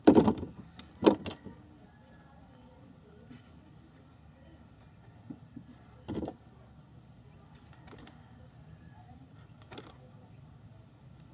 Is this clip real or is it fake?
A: real